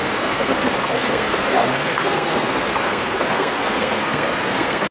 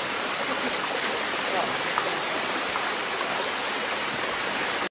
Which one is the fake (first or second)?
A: first